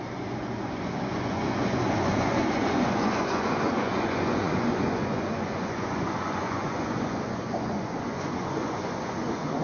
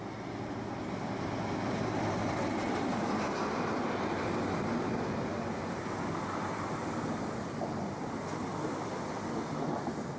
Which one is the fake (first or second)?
first